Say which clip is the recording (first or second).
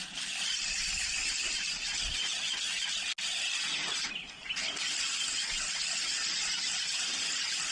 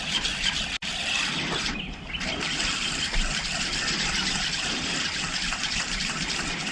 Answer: first